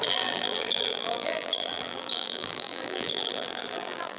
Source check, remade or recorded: remade